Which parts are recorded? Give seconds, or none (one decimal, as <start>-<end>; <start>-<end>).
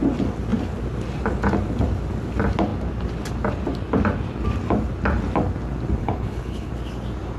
0.0-6.0; 6.7-7.4